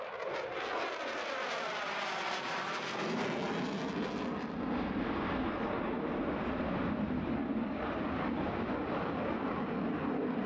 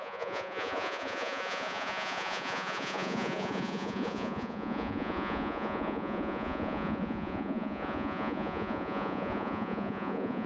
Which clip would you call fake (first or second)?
second